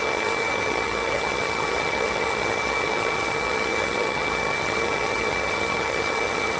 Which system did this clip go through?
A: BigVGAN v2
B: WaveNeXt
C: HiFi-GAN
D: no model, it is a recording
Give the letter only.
C